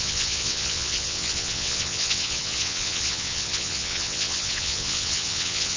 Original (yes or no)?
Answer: no